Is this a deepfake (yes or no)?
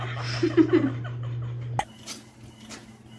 no